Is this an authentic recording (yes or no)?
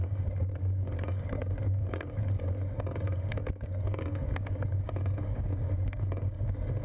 no